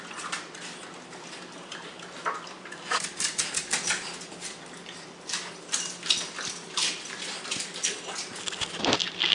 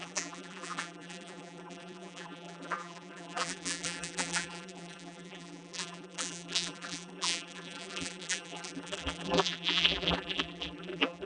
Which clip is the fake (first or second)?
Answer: second